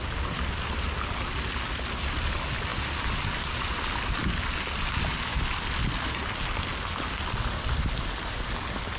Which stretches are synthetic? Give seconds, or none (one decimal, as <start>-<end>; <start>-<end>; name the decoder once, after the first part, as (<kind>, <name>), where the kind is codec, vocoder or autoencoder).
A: none